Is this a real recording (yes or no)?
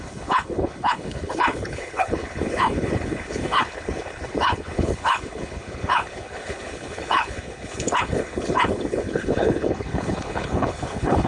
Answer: no